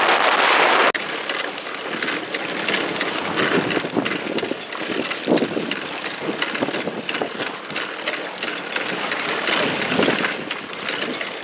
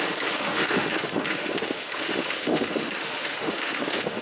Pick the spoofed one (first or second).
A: second